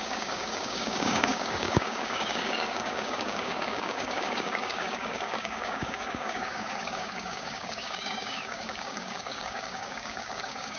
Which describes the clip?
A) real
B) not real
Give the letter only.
B